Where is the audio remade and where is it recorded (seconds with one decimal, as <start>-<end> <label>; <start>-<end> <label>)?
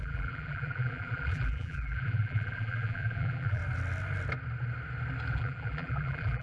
0.0-3.6 remade; 3.6-5.3 recorded; 5.3-6.4 remade